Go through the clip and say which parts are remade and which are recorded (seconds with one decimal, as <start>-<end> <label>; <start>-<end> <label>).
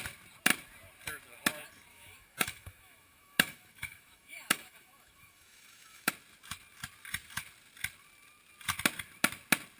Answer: 0.0-1.9 recorded; 1.9-6.1 remade; 6.1-9.8 recorded